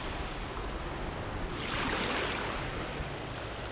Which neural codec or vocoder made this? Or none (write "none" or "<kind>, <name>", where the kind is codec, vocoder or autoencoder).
none